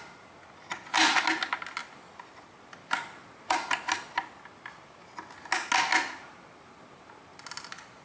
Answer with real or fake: real